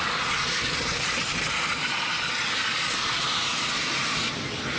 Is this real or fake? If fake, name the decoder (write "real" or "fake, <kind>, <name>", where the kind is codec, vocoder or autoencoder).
real